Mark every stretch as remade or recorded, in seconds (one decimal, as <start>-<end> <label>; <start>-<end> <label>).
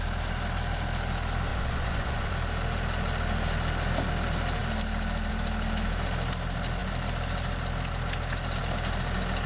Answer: 0.0-1.5 recorded; 1.5-2.3 remade; 2.3-9.5 recorded